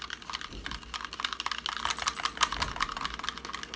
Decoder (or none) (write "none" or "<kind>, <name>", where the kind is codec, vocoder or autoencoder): none